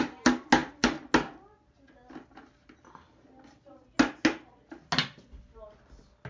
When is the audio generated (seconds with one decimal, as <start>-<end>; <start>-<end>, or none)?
none